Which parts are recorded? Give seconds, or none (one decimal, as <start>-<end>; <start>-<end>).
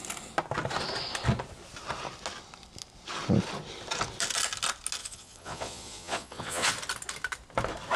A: 0.0-5.0; 6.7-8.0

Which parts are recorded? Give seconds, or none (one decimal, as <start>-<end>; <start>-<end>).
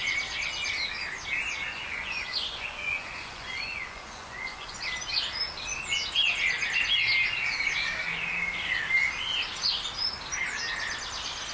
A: 0.0-1.7; 4.8-11.5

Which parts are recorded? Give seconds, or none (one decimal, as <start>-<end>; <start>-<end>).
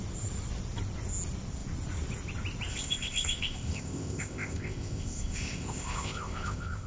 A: 0.0-2.7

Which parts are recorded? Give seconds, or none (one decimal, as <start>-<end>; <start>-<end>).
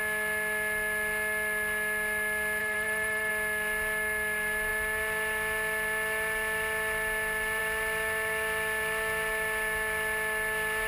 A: 0.0-2.6; 3.3-10.9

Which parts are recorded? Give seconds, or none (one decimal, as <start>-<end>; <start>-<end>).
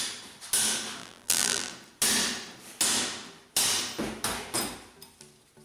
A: 0.0-1.0; 1.7-5.6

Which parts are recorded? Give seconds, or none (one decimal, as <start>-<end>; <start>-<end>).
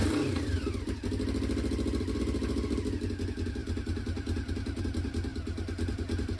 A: 0.0-6.4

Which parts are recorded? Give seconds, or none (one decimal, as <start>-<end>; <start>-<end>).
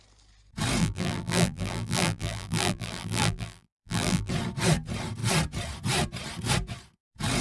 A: 0.0-0.8; 4.3-7.4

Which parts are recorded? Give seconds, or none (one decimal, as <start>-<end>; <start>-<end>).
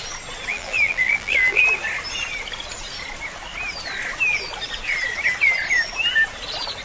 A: 0.0-0.5; 1.6-6.8